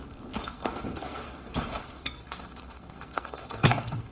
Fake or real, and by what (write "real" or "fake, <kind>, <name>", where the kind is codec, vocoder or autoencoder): fake, codec, SNAC